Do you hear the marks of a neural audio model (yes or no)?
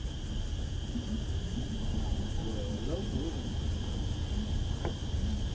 no